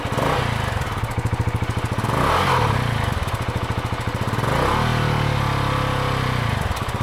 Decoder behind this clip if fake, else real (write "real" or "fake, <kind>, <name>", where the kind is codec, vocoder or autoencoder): real